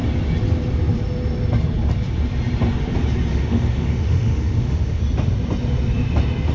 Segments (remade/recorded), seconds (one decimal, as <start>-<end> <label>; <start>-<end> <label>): 0.0-3.3 recorded; 3.3-5.0 remade; 5.0-6.5 recorded